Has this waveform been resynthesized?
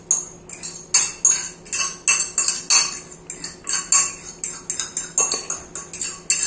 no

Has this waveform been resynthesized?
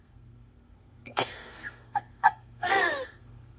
yes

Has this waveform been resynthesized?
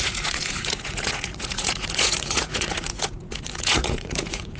yes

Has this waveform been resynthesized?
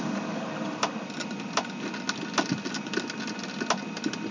no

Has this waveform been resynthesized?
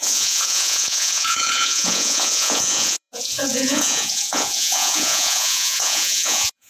yes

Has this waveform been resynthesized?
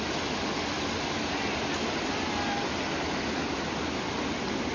no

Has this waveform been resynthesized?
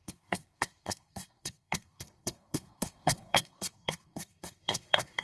yes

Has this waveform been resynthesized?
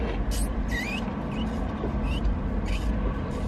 no